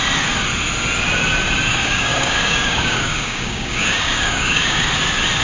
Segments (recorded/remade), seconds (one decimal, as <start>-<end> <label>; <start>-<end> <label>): 0.0-1.7 recorded; 1.7-4.9 remade; 4.9-5.4 recorded